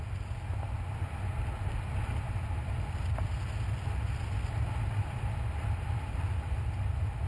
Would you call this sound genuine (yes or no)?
yes